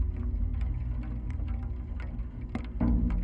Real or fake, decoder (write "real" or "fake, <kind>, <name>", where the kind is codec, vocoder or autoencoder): real